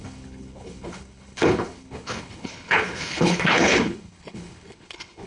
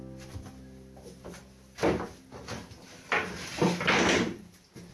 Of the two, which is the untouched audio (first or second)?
second